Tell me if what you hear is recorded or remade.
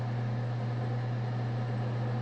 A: recorded